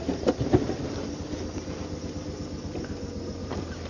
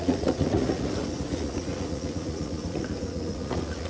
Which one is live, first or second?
first